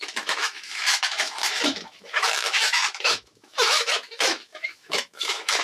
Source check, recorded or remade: remade